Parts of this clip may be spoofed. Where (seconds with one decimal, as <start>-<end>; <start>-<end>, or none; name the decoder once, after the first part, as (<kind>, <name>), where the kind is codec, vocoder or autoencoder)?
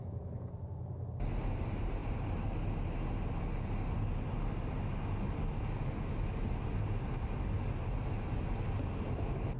none